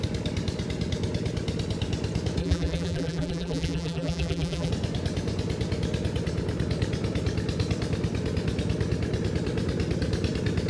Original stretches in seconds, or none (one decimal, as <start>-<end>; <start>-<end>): 0.0-2.4; 4.7-10.7